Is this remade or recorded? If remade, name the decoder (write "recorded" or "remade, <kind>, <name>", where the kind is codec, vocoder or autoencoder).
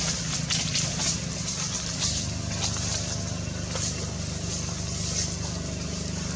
recorded